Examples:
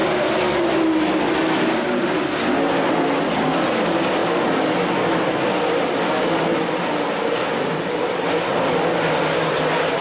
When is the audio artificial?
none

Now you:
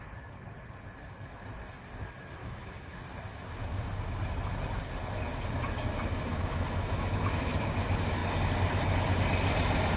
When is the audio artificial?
2.4-3.0 (autoencoder, DAC-VAE); 6.3-7.5